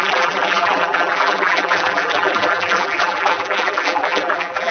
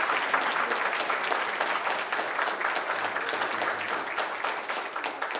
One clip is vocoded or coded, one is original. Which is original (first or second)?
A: second